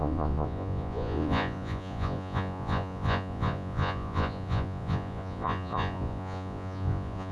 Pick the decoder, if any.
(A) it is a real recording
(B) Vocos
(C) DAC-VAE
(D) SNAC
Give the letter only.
B